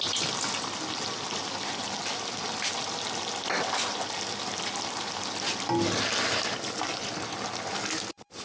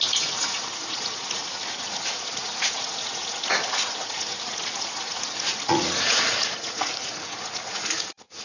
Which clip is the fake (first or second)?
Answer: second